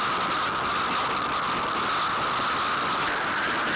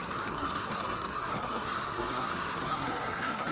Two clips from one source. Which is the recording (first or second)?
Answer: first